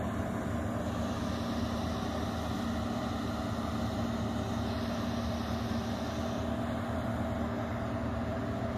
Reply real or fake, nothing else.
real